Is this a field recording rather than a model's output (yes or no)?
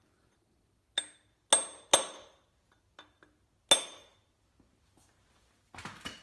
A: yes